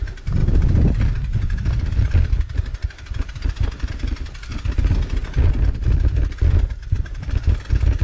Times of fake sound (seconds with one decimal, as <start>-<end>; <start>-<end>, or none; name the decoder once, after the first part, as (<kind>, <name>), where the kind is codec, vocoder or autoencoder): none

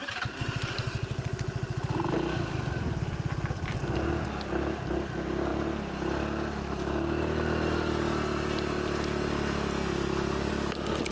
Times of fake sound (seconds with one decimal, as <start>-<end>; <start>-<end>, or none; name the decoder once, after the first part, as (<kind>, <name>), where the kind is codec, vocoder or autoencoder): none

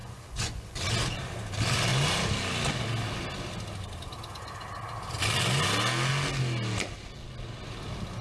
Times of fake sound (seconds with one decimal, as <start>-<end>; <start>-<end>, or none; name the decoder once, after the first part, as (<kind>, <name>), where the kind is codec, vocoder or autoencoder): 0.0-0.8 (vocoder, Vocos)

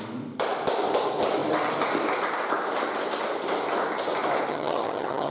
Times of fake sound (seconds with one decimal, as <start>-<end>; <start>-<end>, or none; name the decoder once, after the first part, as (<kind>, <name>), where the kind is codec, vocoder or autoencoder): 4.5-5.3 (vocoder, HiFi-GAN)

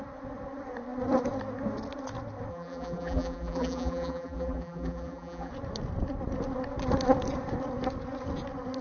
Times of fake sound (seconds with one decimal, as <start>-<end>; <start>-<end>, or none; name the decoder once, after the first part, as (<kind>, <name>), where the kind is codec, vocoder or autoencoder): 2.5-5.5 (vocoder, BigVGAN v2)

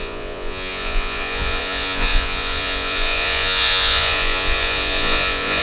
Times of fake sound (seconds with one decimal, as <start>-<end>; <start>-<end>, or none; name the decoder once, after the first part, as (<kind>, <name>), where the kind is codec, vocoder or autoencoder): 0.0-5.6 (vocoder, Vocos)